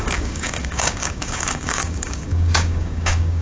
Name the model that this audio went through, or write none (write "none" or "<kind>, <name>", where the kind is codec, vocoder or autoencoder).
codec, DAC